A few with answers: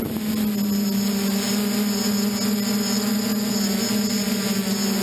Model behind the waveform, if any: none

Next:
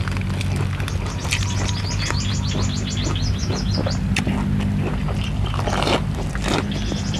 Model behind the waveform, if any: none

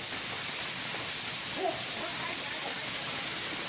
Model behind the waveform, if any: none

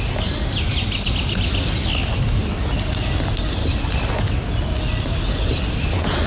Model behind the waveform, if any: none